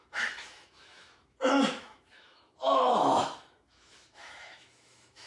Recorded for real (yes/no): no